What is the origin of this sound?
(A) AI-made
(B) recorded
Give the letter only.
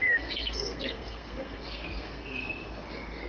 A